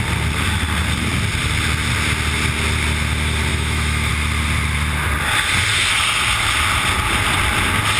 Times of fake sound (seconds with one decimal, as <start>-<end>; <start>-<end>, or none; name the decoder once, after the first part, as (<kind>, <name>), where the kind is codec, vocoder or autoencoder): 3.5-4.1 (autoencoder, DAC-VAE)